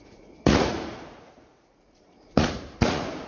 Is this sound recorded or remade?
remade